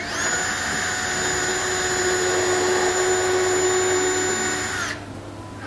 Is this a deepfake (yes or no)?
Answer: no